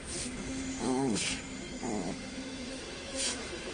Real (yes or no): no